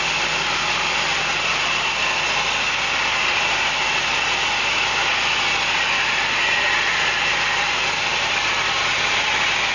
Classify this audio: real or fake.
real